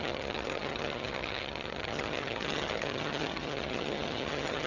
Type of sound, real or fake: fake